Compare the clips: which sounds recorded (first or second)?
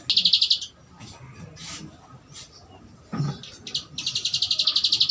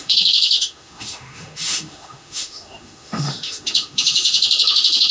first